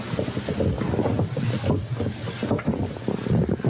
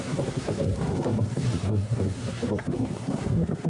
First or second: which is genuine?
first